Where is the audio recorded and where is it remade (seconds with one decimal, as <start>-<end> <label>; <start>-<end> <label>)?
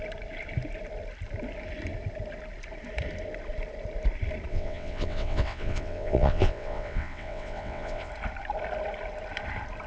0.0-4.5 recorded; 4.5-8.1 remade; 8.1-9.9 recorded